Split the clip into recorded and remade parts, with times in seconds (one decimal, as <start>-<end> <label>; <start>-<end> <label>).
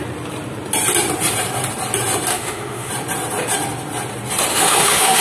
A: 0.0-2.3 recorded; 2.3-2.9 remade; 2.9-4.5 recorded; 4.5-5.2 remade